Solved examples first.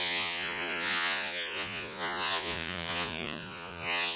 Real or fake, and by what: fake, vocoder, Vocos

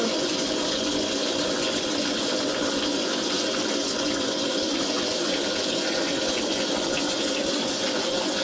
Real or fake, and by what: fake, vocoder, Vocos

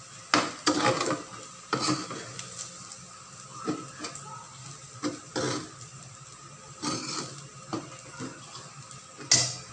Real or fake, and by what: real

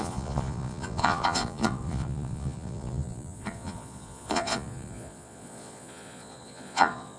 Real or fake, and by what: fake, vocoder, Vocos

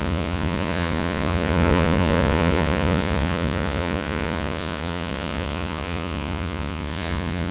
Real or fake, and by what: fake, vocoder, Vocos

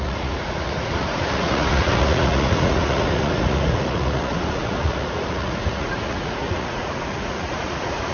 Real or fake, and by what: fake, vocoder, Vocos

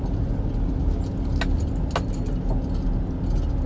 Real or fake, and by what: real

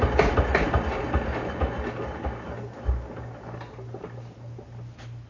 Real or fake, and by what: real